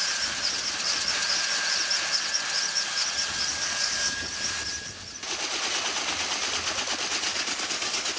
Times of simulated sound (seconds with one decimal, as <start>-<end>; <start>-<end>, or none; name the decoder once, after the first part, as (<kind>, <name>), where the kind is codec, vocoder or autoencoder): 3.5-4.3 (codec, DAC); 7.3-8.2